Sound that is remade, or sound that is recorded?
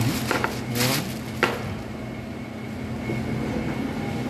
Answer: recorded